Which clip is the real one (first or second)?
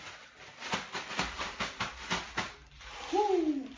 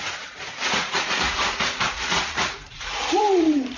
first